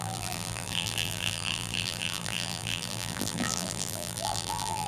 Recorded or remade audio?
remade